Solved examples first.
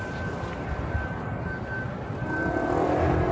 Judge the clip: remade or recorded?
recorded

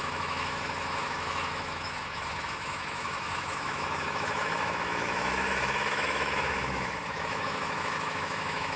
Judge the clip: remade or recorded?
remade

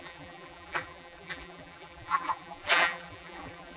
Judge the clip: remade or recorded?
remade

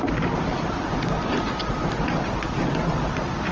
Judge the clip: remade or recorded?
recorded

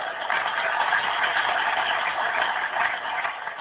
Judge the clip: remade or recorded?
recorded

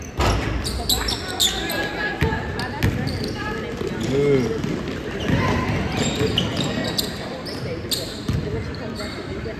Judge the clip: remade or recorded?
recorded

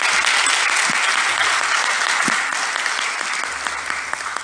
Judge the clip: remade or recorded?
recorded